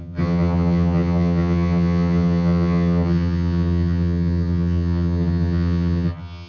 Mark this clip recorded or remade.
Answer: remade